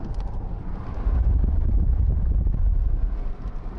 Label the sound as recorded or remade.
recorded